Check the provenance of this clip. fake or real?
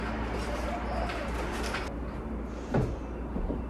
real